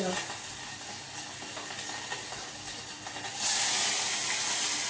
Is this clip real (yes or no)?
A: yes